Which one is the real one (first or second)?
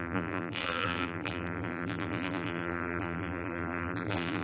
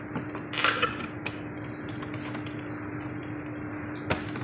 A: second